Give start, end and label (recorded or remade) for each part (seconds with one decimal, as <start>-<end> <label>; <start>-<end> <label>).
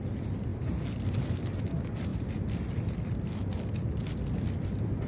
0.0-5.1 recorded